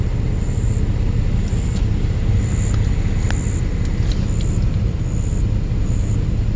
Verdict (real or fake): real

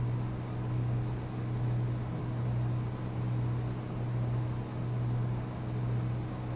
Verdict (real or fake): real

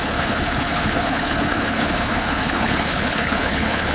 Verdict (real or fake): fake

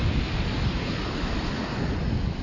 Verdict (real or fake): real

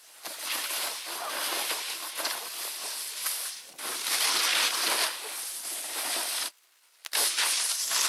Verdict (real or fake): real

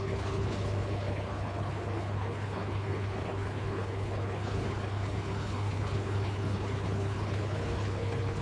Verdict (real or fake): fake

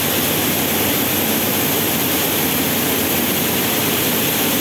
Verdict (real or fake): real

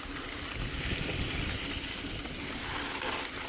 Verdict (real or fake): real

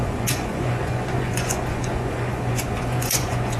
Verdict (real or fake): fake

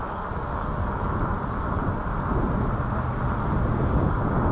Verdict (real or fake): real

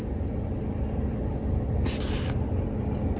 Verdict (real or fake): real